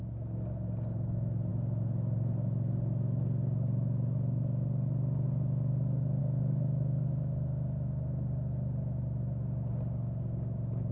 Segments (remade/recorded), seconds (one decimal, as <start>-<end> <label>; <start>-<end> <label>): 0.0-10.9 recorded